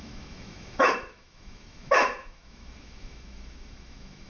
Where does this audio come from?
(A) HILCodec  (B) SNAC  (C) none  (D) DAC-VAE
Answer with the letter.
D